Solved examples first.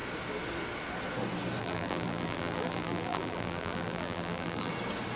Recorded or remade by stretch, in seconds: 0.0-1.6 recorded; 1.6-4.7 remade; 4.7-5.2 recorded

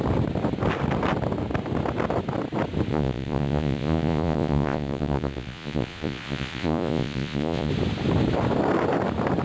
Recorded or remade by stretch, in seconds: 0.0-2.9 recorded; 2.9-7.7 remade; 7.7-9.4 recorded

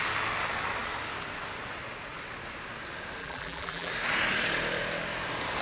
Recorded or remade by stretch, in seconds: 0.0-3.2 recorded; 3.2-3.9 remade; 3.9-5.6 recorded

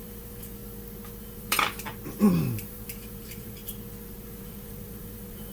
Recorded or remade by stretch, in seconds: 0.0-0.6 remade; 0.6-1.2 recorded; 1.2-1.9 remade; 1.9-2.6 recorded; 2.6-3.6 remade; 3.6-4.2 recorded; 4.2-5.5 remade

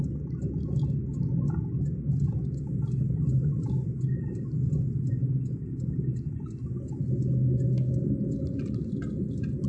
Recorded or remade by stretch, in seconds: 0.0-9.7 recorded

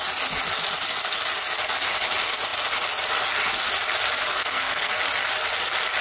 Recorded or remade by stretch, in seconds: 0.0-4.3 recorded; 4.3-5.0 remade; 5.0-6.0 recorded

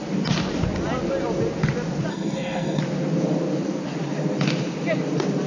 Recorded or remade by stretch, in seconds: 0.0-2.1 recorded; 2.1-2.8 remade; 2.8-5.5 recorded

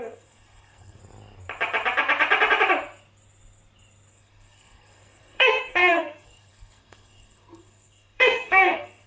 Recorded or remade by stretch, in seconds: 0.0-1.0 remade; 1.0-4.1 recorded; 4.1-9.1 remade